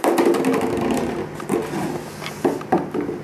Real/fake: real